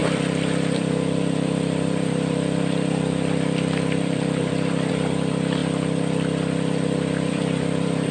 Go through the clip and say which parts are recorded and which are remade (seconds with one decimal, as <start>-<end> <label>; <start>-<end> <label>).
0.0-5.6 remade; 5.6-7.3 recorded; 7.3-8.1 remade